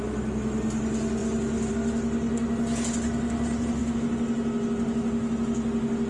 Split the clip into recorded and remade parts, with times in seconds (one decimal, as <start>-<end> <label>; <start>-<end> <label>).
0.0-6.1 recorded